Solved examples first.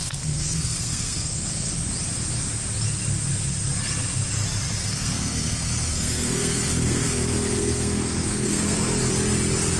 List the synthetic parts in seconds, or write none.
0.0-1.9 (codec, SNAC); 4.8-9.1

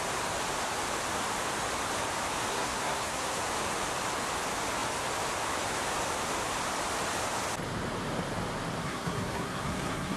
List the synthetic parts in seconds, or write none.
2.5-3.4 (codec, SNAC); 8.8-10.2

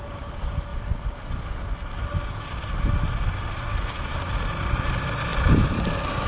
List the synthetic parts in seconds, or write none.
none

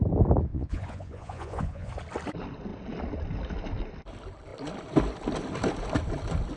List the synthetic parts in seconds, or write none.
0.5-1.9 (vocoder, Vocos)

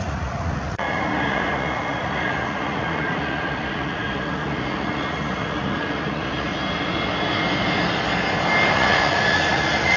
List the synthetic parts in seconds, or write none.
0.0-6.5 (vocoder, Vocos); 8.7-10.0

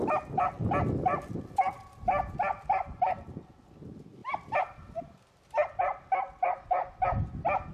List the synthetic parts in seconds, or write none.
none